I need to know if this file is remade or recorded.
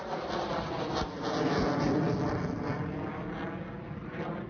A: recorded